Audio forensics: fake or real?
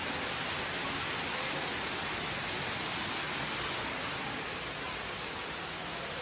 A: real